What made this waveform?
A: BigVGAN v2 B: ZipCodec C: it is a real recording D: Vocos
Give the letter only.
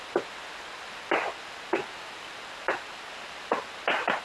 C